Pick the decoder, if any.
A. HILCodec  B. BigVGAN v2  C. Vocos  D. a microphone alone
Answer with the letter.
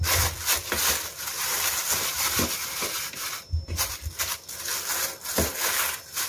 D